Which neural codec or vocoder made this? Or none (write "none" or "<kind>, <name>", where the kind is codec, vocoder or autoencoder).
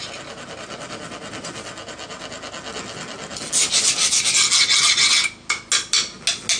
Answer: none